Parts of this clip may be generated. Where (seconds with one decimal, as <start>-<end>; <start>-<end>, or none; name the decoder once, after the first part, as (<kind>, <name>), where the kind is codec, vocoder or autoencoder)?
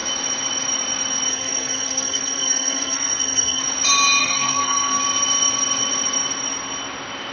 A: 1.3-3.6 (codec, SNAC); 4.2-5.0